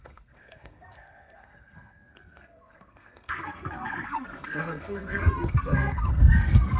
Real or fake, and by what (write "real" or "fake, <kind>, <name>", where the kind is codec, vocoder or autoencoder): fake, codec, SNAC